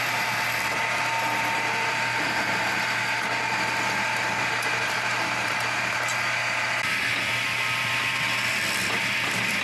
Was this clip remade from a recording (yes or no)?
no